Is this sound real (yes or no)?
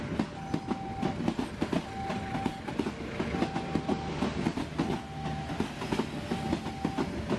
yes